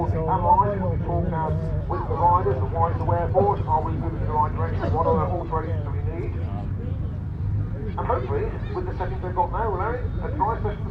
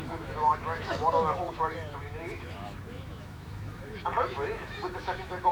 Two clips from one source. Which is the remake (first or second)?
second